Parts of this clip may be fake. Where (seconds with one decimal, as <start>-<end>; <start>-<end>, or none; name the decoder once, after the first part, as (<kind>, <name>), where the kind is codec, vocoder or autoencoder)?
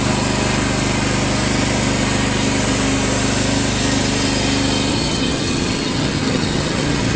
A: 4.9-7.2 (vocoder, HiFi-GAN)